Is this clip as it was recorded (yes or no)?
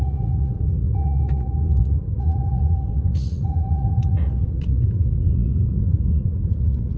no